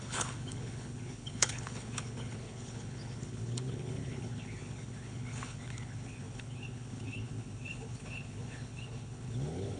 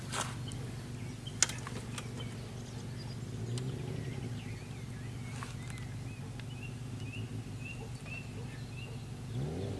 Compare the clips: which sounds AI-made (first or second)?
first